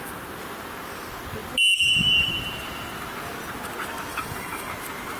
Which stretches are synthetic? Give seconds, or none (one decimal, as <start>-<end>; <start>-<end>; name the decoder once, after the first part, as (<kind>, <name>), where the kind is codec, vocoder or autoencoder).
4.1-4.7 (codec, DAC)

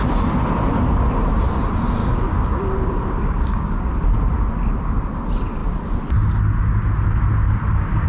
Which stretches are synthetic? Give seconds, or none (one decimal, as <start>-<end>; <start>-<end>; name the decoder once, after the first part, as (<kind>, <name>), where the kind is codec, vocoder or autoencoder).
2.0-3.9 (codec, DAC)